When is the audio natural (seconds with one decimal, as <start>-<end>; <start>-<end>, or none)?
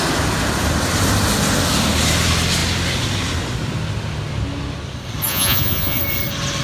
0.0-5.3; 6.0-6.6